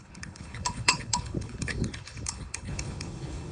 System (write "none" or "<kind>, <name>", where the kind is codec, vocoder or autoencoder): codec, HILCodec